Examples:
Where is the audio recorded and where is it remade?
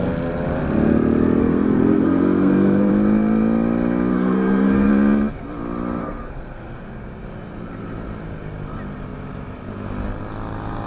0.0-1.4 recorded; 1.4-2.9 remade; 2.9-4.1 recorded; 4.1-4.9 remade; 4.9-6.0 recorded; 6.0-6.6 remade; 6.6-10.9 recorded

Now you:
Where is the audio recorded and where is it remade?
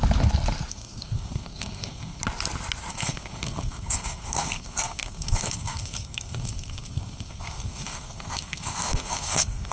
0.0-0.7 recorded; 0.7-2.2 remade; 2.2-2.9 recorded; 2.9-9.7 remade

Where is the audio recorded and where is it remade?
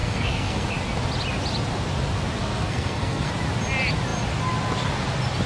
0.0-0.7 remade; 0.7-2.4 recorded; 2.4-3.3 remade; 3.3-5.5 recorded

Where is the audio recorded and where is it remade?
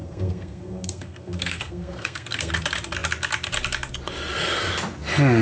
0.0-2.5 remade; 2.5-5.4 recorded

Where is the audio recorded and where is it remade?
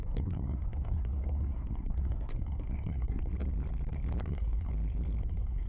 0.0-3.3 remade; 3.3-4.2 recorded; 4.2-4.7 remade; 4.7-5.2 recorded; 5.2-5.7 remade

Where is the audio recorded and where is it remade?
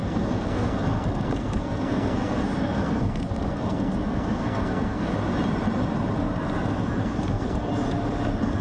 0.0-5.1 remade; 5.1-7.0 recorded; 7.0-7.7 remade; 7.7-8.6 recorded